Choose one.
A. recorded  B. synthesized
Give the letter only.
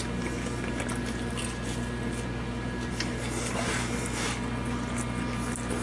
A